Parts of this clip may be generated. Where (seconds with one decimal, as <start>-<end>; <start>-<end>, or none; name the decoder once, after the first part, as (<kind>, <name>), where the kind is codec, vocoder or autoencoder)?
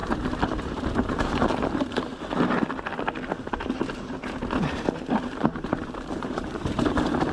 0.0-2.1 (vocoder, BigVGAN v2); 4.6-7.3